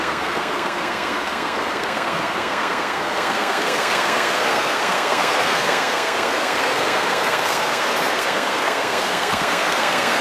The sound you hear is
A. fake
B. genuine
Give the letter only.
A